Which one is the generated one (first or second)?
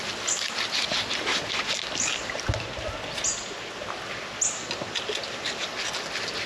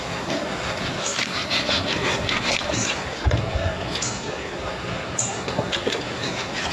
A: second